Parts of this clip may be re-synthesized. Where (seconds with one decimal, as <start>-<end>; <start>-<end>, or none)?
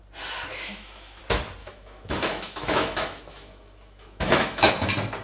0.5-1.2; 1.6-4.7